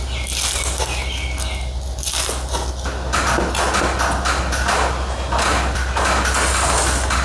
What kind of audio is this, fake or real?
real